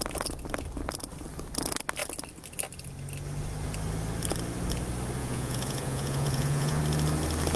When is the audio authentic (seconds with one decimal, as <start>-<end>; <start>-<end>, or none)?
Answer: 0.0-5.2; 6.8-7.6